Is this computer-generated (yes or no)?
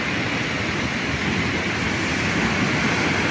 no